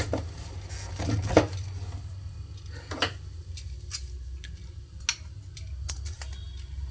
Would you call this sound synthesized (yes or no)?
no